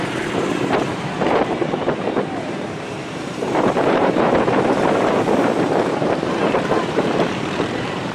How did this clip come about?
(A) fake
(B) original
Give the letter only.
A